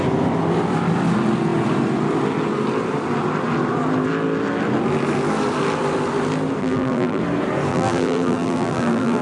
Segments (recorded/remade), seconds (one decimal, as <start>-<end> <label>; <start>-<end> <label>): 0.0-6.6 recorded; 6.6-7.2 remade; 7.2-7.7 recorded; 7.7-9.2 remade